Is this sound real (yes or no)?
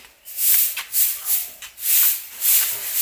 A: yes